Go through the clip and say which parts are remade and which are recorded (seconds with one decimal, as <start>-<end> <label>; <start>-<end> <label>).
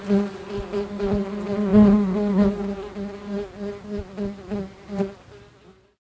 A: 0.0-6.2 recorded